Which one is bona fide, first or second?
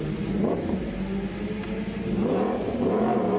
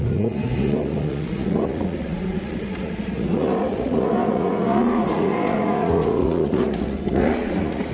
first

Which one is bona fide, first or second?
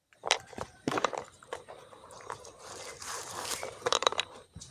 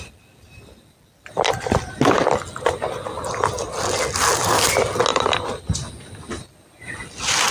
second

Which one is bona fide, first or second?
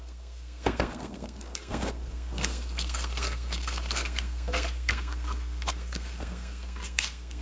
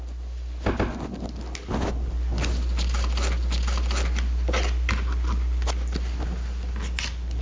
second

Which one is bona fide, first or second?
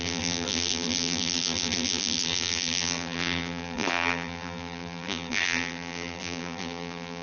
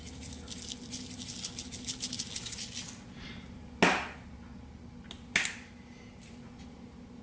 second